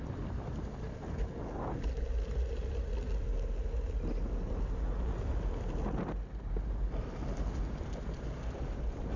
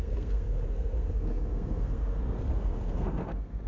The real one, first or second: first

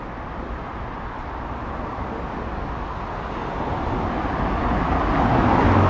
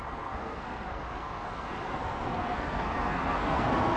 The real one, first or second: first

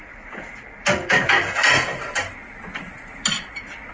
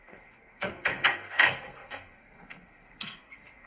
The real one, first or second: first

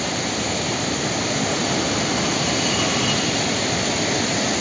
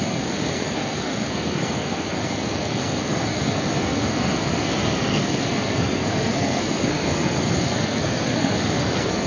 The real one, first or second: first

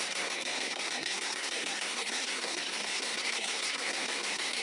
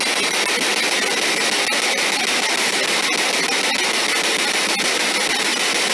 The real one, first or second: second